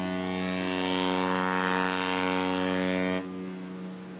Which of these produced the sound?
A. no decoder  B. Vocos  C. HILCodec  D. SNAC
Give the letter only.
A